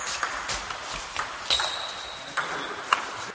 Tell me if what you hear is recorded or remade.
recorded